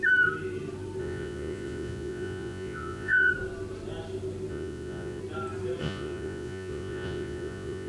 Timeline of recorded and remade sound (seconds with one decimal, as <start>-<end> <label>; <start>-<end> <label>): 0.0-1.0 recorded; 1.0-3.3 remade; 3.3-4.5 recorded; 4.5-5.2 remade; 5.2-5.8 recorded; 5.8-7.9 remade